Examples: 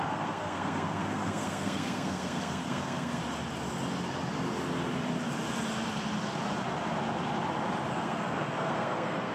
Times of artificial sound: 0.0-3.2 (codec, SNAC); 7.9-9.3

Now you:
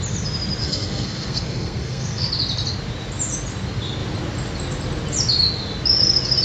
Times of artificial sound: 0.6-2.3 (codec, SNAC)

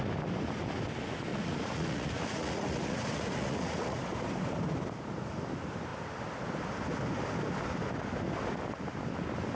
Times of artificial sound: 1.3-4.0 (vocoder, Vocos)

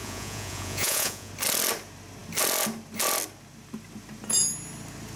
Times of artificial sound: 0.0-1.3 (vocoder, Vocos)